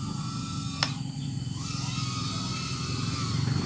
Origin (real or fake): real